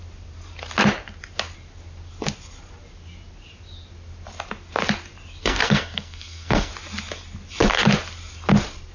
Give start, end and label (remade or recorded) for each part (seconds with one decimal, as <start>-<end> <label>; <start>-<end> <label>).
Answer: 0.0-5.4 recorded; 5.4-6.7 remade; 6.7-8.9 recorded